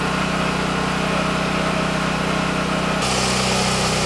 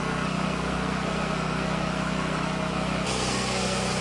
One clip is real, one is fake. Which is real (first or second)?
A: first